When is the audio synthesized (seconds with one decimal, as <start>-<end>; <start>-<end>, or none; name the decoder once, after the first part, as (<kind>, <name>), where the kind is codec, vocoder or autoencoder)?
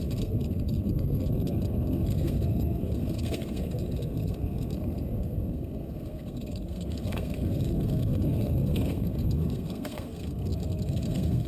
0.0-11.5 (codec, SNAC)